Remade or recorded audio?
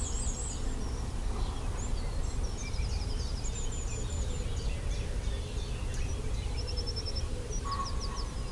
recorded